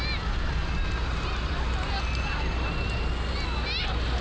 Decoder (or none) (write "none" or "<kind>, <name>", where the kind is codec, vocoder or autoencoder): none